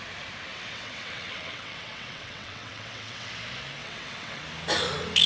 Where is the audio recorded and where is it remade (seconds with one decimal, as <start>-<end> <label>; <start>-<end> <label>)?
0.0-0.5 recorded; 0.5-3.3 remade; 3.3-3.8 recorded; 3.8-4.4 remade; 4.4-5.3 recorded

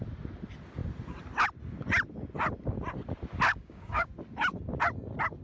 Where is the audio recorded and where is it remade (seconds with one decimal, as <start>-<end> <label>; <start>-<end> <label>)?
0.0-3.5 recorded; 3.5-4.1 remade; 4.1-5.4 recorded

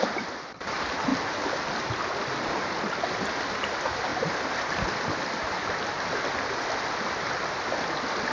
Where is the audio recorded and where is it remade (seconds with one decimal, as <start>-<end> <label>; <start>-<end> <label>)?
0.0-8.3 recorded

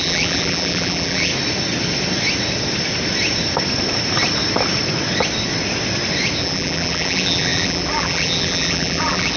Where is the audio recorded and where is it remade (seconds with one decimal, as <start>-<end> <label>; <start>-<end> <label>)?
0.0-1.3 remade; 1.3-6.4 recorded; 6.4-9.4 remade

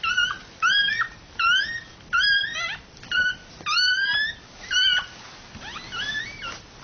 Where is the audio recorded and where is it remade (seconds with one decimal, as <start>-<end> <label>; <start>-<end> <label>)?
0.0-6.8 recorded

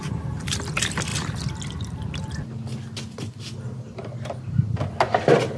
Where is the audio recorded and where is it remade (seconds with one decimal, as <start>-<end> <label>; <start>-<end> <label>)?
0.0-5.6 recorded

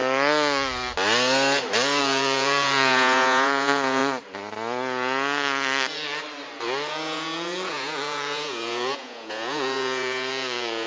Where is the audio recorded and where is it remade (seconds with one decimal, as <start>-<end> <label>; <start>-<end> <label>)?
0.0-2.0 recorded; 2.0-4.0 remade; 4.0-6.9 recorded; 6.9-10.9 remade